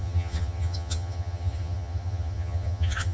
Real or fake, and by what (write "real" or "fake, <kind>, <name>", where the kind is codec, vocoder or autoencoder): fake, vocoder, HiFi-GAN